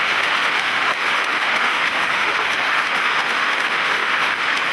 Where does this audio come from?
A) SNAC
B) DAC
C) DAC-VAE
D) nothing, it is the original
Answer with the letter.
C